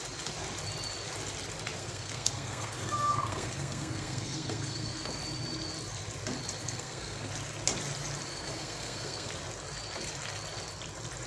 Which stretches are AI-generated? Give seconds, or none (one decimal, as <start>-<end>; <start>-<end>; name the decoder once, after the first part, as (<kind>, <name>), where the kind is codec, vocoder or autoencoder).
1.8-5.1 (codec, SNAC); 6.6-7.3; 8.3-9.3